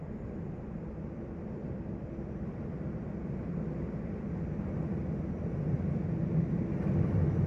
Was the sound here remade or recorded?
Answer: recorded